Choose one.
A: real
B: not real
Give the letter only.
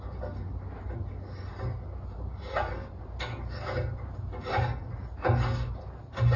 A